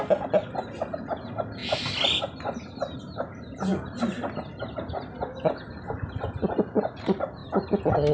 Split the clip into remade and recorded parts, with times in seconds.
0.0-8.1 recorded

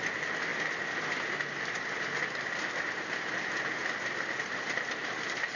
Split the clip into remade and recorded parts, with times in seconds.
0.0-5.6 recorded

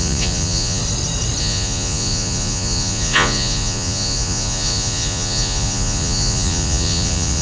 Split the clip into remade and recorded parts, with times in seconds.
0.0-0.8 remade; 0.8-1.4 recorded; 1.4-7.4 remade

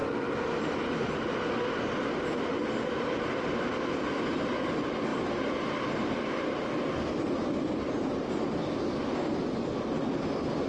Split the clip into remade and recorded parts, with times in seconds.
0.0-10.7 recorded

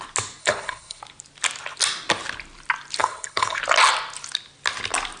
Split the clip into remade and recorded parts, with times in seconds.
0.0-0.4 recorded; 0.4-1.0 remade; 1.0-3.0 recorded; 3.0-3.6 remade; 3.6-5.2 recorded

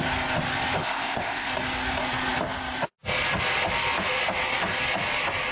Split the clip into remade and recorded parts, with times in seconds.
0.0-0.8 recorded; 0.8-1.5 remade; 1.5-5.5 recorded